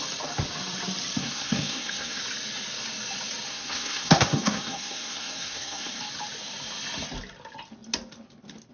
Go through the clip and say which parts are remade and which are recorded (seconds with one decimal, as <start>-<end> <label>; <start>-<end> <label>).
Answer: 0.0-1.2 recorded; 1.2-2.2 remade; 2.2-3.5 recorded; 3.5-6.0 remade; 6.0-8.7 recorded

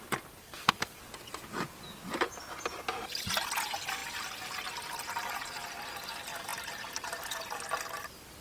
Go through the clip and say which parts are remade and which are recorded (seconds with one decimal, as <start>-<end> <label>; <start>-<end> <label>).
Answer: 0.0-0.4 recorded; 0.4-1.0 remade; 1.0-8.4 recorded

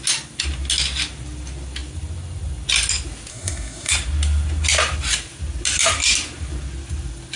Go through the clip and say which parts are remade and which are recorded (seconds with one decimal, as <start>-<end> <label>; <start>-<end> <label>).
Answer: 0.0-3.3 recorded; 3.3-3.9 remade; 3.9-7.4 recorded

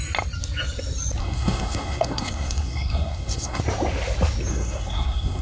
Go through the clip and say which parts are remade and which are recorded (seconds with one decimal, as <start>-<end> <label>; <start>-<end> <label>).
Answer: 0.0-1.2 recorded; 1.2-3.6 remade; 3.6-4.5 recorded; 4.5-5.4 remade